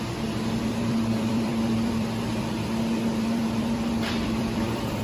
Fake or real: fake